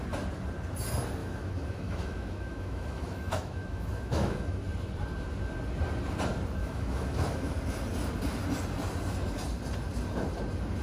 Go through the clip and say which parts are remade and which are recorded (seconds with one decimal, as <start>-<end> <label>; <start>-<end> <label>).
0.0-1.2 recorded; 1.2-4.6 remade; 4.6-6.6 recorded; 6.6-7.5 remade; 7.5-10.8 recorded